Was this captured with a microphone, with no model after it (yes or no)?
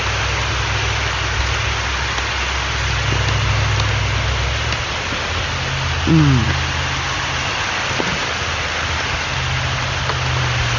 yes